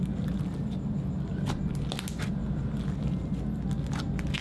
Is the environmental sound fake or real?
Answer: real